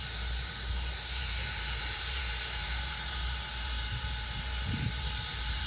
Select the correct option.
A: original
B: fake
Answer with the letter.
B